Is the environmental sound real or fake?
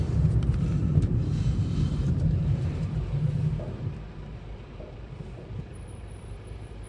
fake